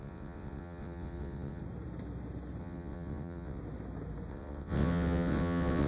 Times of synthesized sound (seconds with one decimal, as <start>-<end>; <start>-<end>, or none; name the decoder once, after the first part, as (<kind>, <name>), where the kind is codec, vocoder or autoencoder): 0.0-1.6 (vocoder, WaveNeXt); 2.6-3.6; 4.3-5.9